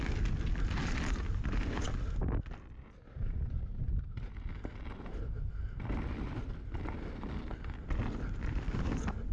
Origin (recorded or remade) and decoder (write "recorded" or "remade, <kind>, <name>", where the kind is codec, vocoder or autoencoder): recorded